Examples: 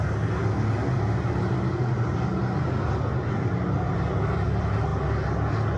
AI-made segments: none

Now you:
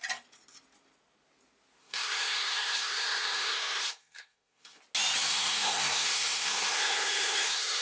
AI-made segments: 1.8-4.8 (codec, SNAC); 5.3-7.8

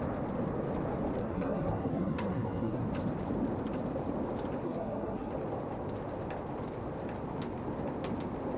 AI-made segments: 1.2-2.8 (codec, SNAC); 4.6-5.3

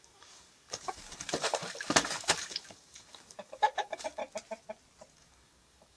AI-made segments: 0.0-4.2 (codec, DAC); 5.1-6.0